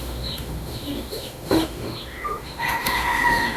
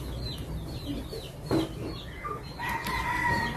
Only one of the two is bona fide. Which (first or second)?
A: second